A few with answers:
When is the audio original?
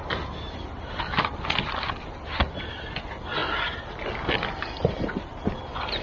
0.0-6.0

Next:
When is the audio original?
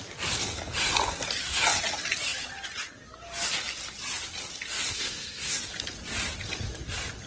0.0-4.9; 5.6-7.3